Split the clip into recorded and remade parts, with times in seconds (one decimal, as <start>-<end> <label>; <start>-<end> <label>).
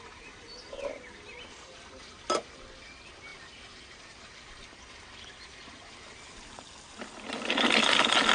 0.0-8.3 recorded